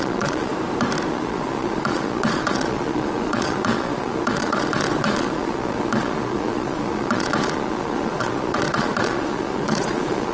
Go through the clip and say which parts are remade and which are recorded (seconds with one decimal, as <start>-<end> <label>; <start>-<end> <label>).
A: 0.0-0.5 remade; 0.5-1.1 recorded; 1.1-10.3 remade